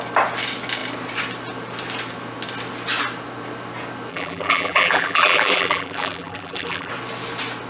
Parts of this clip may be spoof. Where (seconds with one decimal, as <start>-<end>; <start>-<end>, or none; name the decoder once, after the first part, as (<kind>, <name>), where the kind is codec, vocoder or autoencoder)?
4.1-6.9 (vocoder, BigVGAN v2)